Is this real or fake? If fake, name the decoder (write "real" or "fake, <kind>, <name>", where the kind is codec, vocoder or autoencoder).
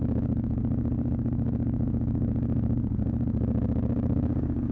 fake, codec, DAC